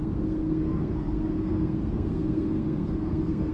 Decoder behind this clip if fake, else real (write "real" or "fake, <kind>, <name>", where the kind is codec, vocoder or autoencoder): fake, codec, SNAC